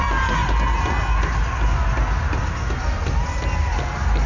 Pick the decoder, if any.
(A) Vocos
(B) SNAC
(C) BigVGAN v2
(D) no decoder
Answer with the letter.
D